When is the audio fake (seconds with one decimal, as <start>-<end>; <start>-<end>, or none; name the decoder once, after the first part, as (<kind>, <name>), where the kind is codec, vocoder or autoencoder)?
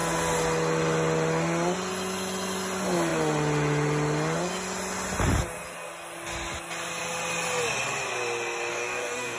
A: 8.7-9.4 (codec, DAC)